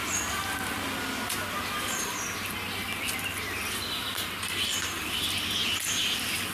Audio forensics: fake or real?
real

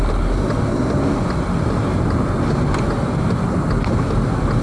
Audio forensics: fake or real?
real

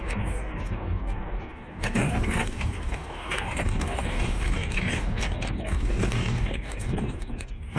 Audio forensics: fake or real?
fake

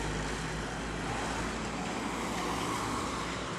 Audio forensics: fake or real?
real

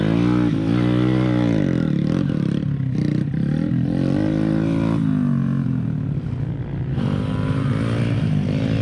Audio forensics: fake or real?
real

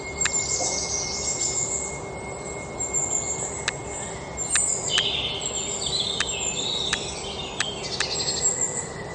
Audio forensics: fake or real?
real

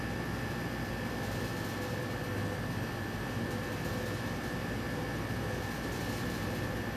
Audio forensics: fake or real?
real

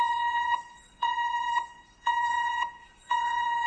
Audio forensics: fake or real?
fake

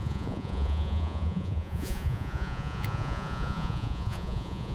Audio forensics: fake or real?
fake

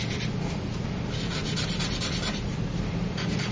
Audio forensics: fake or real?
real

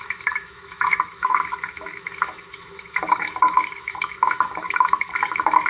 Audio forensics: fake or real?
fake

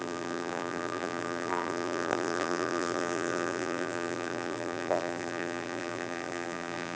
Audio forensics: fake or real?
fake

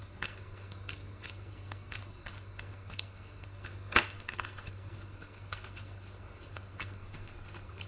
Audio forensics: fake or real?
fake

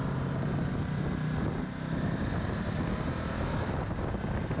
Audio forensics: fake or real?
real